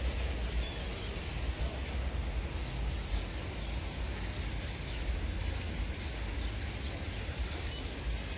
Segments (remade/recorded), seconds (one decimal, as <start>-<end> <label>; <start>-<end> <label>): 0.0-8.4 recorded